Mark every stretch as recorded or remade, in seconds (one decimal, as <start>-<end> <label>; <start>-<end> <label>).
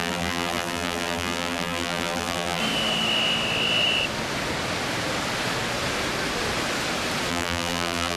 0.0-2.6 remade; 2.6-7.3 recorded; 7.3-8.2 remade